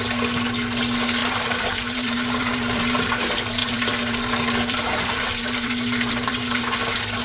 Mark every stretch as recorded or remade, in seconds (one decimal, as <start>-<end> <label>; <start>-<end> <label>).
0.0-1.2 recorded; 1.2-3.1 remade; 3.1-3.6 recorded; 3.6-6.6 remade; 6.6-7.2 recorded